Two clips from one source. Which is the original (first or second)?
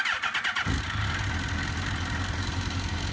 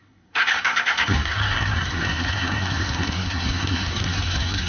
first